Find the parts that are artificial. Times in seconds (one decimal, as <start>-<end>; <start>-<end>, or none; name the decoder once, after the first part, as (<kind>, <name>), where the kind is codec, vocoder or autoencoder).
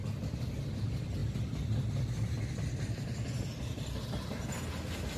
none